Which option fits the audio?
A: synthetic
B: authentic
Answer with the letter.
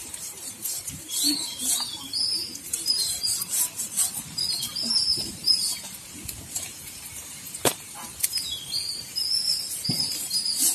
A